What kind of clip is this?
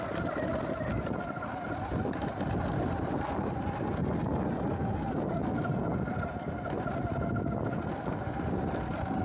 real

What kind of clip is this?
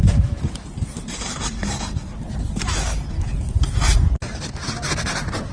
fake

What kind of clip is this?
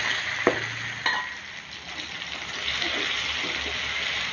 real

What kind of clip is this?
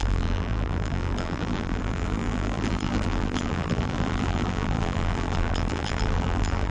fake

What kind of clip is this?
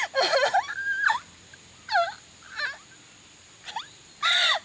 real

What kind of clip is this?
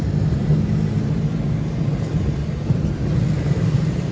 real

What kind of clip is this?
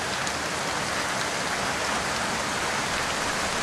real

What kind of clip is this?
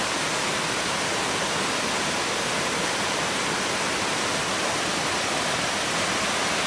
real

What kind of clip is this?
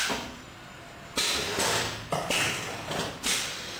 fake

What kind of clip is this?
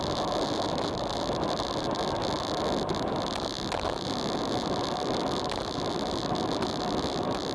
real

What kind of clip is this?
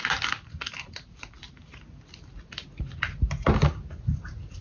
real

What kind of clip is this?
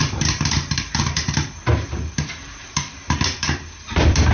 fake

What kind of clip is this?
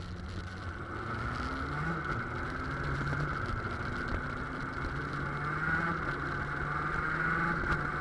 real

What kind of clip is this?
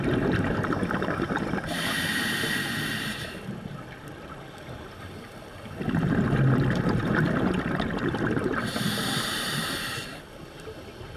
real